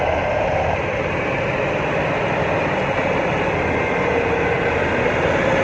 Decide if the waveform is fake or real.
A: real